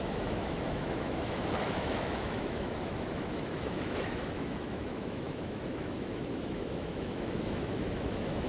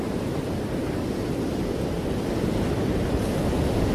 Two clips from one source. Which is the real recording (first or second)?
second